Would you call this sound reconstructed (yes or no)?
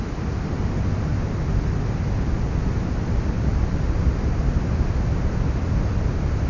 no